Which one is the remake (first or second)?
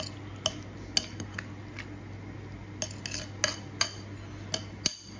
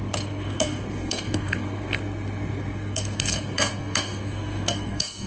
second